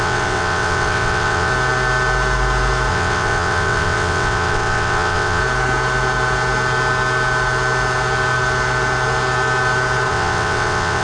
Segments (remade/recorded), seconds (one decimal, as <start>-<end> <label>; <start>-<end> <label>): 0.0-1.5 remade; 1.5-2.9 recorded; 2.9-5.4 remade; 5.4-10.1 recorded; 10.1-11.0 remade